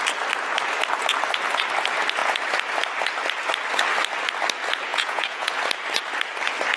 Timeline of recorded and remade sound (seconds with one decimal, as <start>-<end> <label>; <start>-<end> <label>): 0.0-4.9 recorded; 4.9-5.5 remade; 5.5-6.8 recorded